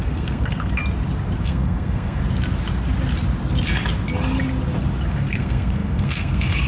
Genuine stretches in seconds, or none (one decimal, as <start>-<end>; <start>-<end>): 0.8-1.4; 2.2-5.1

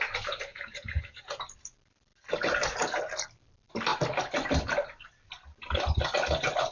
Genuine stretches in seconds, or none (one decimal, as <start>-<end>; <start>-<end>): 0.0-0.5; 1.4-6.7